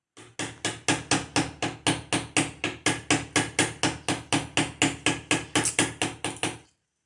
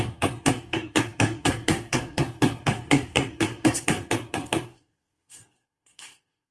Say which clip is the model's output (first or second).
second